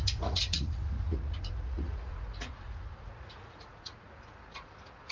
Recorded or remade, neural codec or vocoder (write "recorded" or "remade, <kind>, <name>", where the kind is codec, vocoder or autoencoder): remade, vocoder, Vocos